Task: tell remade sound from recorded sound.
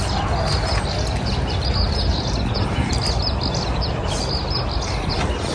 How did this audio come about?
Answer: recorded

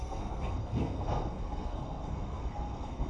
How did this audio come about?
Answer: remade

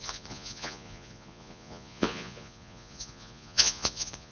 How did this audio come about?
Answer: remade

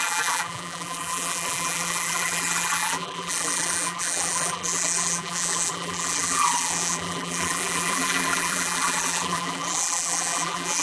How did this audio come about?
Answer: remade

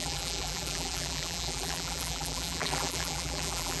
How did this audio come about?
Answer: remade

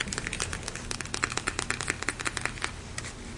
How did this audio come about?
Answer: recorded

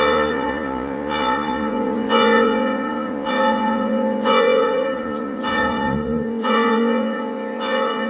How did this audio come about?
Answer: remade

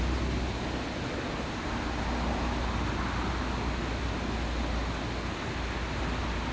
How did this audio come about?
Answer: recorded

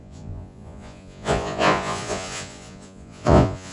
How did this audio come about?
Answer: remade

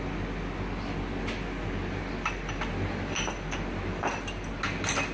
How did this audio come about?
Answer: recorded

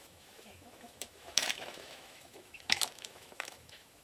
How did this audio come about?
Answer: remade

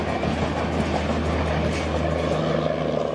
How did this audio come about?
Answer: recorded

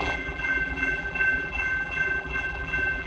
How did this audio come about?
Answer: remade